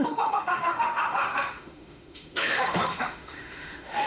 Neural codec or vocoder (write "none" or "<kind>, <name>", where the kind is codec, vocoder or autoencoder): autoencoder, DAC-VAE